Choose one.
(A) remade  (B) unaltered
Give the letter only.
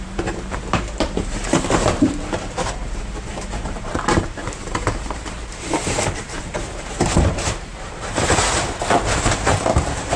A